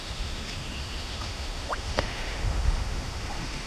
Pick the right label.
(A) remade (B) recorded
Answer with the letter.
A